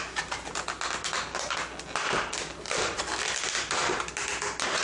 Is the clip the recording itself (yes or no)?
yes